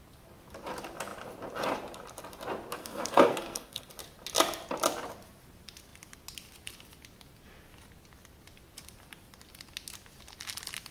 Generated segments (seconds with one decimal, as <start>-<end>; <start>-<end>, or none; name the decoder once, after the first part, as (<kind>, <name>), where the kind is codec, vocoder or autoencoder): 2.8-3.9 (codec, SNAC)